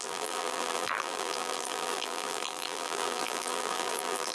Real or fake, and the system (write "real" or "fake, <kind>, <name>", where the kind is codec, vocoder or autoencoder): fake, vocoder, BigVGAN v2